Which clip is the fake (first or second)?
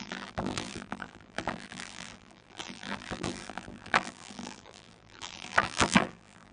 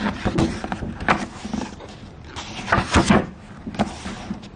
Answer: first